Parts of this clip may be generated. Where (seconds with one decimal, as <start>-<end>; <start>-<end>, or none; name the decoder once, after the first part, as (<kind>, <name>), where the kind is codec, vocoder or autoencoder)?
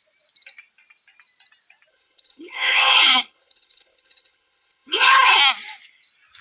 1.9-5.4 (codec, HILCodec)